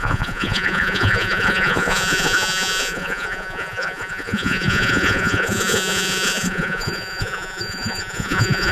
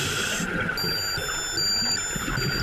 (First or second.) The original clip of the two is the second